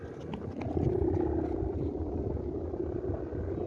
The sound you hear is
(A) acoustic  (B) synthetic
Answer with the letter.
A